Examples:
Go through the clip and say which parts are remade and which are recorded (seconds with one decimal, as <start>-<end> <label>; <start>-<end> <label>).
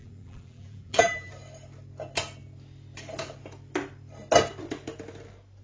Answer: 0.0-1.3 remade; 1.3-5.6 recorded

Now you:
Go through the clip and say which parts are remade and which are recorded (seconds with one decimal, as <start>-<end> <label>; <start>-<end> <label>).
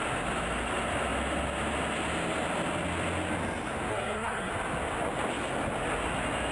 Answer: 0.0-3.9 recorded; 3.9-4.5 remade; 4.5-6.5 recorded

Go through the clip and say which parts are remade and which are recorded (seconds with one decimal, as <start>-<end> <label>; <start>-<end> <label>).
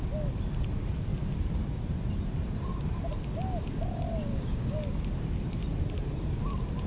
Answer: 0.0-4.3 recorded; 4.3-5.0 remade; 5.0-6.9 recorded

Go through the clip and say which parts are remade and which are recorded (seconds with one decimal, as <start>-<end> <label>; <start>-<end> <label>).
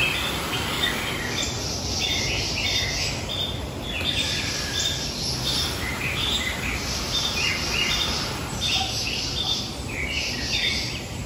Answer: 0.0-0.5 recorded; 0.5-1.1 remade; 1.1-11.3 recorded